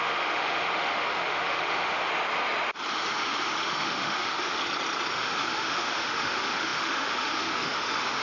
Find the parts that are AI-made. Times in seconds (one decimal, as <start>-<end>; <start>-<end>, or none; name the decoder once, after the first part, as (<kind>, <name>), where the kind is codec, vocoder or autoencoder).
0.0-2.1 (autoencoder, DAC-VAE); 2.9-4.6; 5.1-8.2

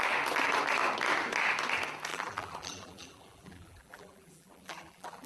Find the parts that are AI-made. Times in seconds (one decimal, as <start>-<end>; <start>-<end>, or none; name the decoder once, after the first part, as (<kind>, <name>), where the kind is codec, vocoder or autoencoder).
2.1-5.3 (vocoder, BigVGAN v2)

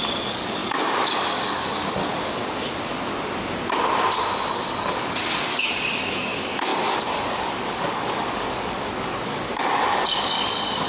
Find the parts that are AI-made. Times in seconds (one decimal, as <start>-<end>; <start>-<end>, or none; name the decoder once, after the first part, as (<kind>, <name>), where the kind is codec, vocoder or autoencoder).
0.0-2.0 (codec, DAC); 4.5-10.9

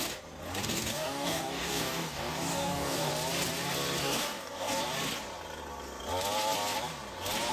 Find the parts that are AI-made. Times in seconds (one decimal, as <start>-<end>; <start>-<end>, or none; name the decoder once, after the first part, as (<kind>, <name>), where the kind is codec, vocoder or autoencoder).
0.6-3.1 (codec, DAC); 4.0-4.8

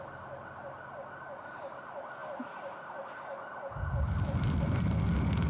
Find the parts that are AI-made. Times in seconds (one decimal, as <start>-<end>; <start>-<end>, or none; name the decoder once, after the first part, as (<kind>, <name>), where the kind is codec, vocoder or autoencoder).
none

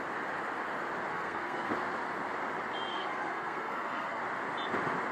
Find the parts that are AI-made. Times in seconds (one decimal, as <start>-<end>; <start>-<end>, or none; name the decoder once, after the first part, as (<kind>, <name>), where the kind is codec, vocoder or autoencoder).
1.1-1.7 (codec, SNAC); 2.9-4.2